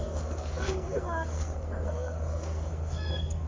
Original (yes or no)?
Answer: no